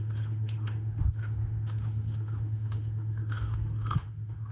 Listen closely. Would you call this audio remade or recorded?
remade